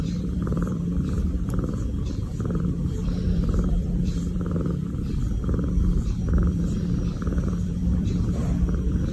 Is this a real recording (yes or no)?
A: no